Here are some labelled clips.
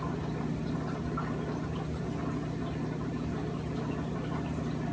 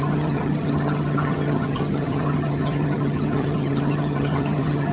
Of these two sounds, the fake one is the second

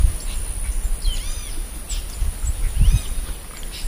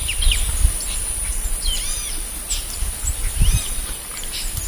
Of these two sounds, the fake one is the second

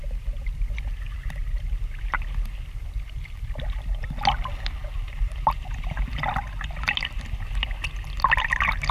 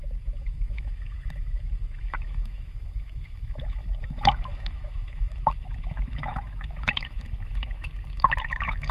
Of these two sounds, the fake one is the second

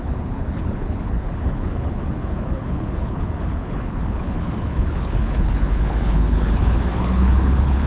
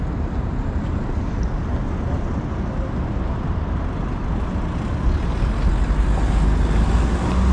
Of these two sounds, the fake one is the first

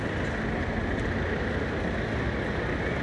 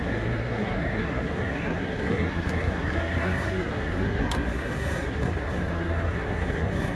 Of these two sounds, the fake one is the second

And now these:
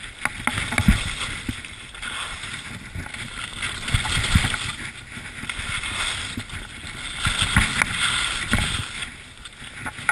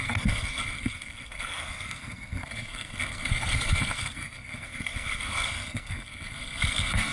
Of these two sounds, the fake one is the second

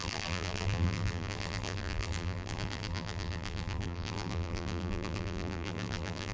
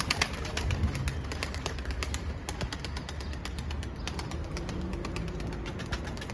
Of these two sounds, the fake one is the first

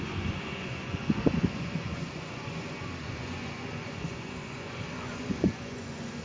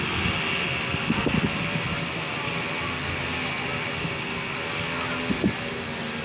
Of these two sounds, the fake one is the first